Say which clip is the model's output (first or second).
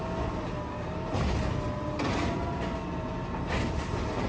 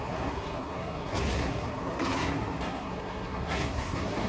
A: second